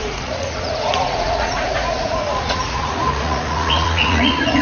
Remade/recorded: remade